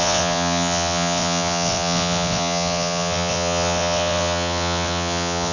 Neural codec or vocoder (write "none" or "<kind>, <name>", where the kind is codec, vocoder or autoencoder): vocoder, WaveNeXt